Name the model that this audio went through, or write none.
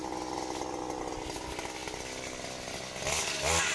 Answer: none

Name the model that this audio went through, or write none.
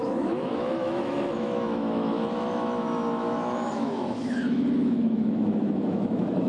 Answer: autoencoder, DAC-VAE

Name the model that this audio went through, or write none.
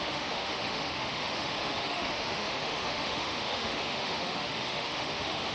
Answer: autoencoder, DAC-VAE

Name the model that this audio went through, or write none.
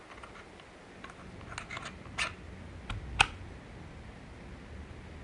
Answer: none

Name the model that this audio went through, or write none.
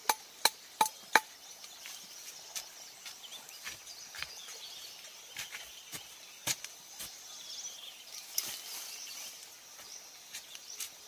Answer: none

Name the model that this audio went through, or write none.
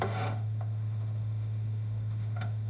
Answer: autoencoder, DAC-VAE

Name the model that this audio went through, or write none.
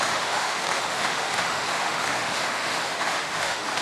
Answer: autoencoder, DAC-VAE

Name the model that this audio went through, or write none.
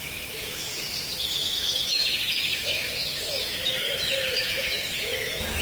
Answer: autoencoder, DAC-VAE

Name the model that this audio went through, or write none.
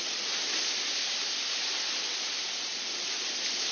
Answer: none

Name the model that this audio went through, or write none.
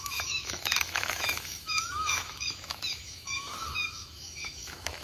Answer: autoencoder, DAC-VAE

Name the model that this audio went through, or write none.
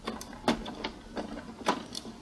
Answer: none